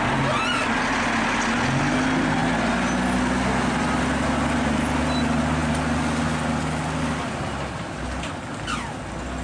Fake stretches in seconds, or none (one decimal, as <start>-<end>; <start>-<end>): none